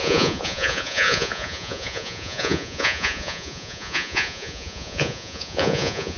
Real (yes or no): no